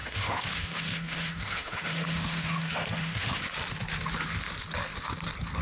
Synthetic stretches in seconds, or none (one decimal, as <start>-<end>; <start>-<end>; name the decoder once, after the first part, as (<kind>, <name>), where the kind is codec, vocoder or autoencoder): 0.0-3.4 (autoencoder, DAC-VAE)